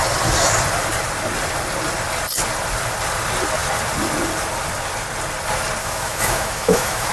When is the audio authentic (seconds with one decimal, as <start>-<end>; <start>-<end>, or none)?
0.0-5.8